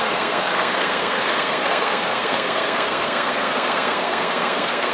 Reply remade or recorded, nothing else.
remade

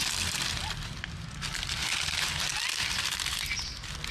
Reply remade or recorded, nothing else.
recorded